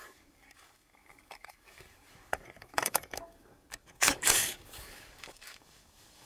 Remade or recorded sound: remade